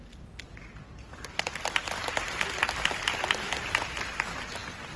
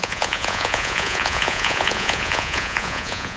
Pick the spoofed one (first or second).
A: second